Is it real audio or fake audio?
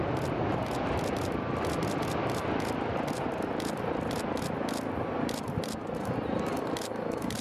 real